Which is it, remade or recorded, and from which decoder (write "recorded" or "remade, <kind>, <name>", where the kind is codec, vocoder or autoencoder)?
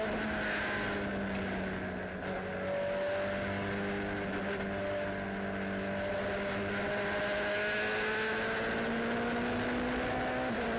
recorded